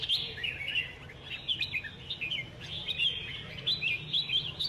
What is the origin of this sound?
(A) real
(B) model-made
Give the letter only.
A